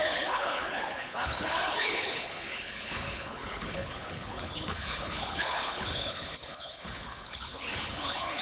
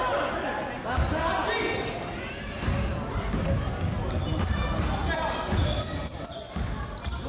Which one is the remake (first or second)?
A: first